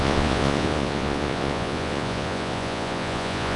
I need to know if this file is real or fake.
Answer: fake